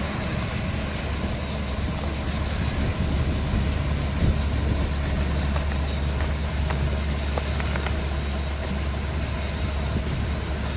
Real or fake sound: real